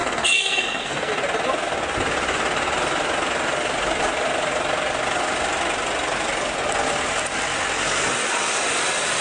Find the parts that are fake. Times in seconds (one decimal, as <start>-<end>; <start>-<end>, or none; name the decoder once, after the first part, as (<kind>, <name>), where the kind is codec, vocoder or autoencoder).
0.0-1.1 (codec, SNAC)